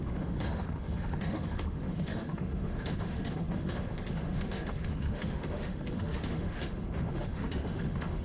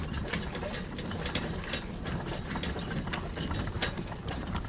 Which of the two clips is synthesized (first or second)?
first